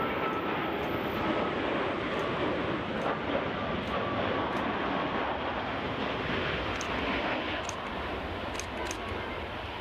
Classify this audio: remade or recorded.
recorded